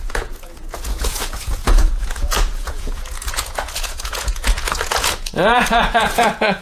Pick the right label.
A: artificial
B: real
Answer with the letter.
A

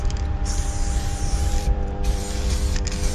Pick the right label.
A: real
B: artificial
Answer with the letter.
B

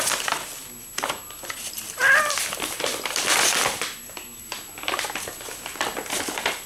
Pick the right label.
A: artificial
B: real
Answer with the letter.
A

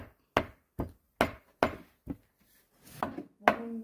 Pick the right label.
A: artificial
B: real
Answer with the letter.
B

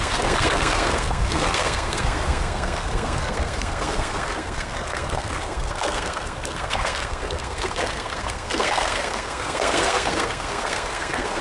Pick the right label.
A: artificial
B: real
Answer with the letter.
A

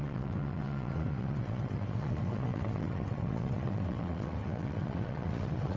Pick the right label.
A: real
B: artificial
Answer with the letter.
B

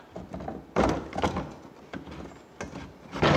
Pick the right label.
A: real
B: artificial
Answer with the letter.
A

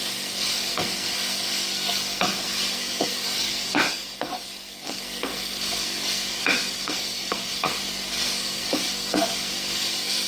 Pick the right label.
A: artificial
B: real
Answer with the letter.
A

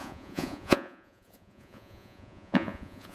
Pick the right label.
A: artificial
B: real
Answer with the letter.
A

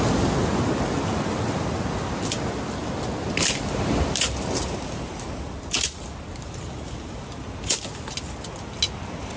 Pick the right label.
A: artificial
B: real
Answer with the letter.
B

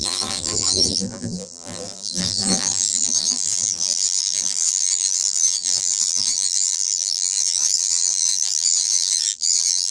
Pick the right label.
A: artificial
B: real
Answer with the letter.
A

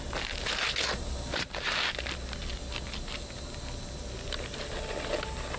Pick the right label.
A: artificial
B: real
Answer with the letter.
B